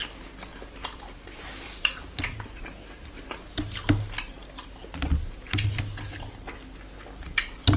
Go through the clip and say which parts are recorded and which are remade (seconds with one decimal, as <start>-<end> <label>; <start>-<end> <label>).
0.0-0.5 recorded; 0.5-2.6 remade; 2.6-7.8 recorded